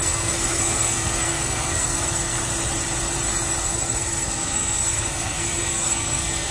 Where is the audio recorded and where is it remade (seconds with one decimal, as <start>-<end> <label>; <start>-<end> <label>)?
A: 0.0-2.4 remade; 2.4-3.6 recorded; 3.6-6.5 remade